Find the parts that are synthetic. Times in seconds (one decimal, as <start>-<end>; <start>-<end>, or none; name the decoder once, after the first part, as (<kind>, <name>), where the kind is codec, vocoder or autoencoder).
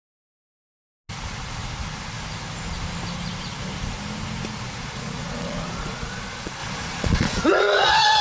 4.8-8.2 (vocoder, Vocos)